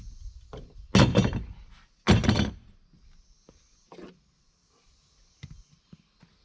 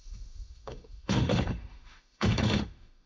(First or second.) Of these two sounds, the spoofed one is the second